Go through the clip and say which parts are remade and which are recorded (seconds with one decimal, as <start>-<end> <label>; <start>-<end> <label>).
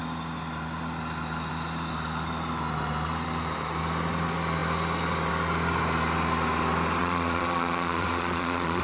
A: 0.0-7.0 recorded; 7.0-8.8 remade